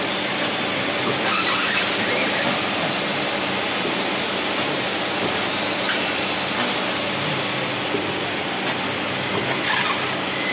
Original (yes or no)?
yes